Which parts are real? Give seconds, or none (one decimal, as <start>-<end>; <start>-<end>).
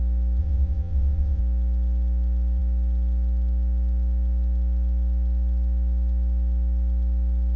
0.0-0.4; 1.4-7.6